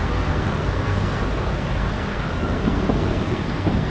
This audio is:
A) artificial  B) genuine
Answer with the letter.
A